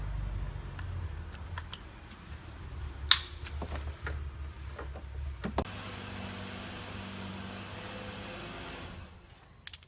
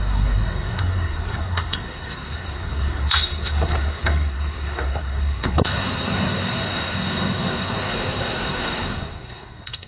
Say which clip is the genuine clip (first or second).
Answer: first